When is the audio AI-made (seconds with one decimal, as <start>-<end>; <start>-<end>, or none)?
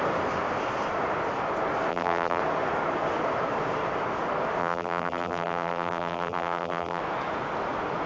1.9-2.4; 4.6-7.0